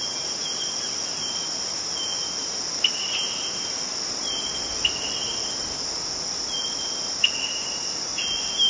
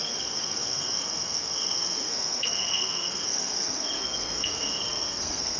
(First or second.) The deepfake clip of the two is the second